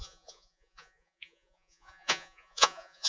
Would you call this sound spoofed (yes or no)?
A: yes